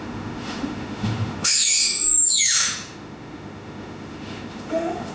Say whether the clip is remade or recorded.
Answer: remade